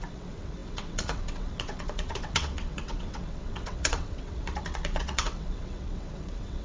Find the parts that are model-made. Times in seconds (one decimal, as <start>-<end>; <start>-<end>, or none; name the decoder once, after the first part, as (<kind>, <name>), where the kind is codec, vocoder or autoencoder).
0.0-6.6 (vocoder, WaveNeXt)